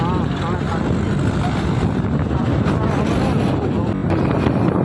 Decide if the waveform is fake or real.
real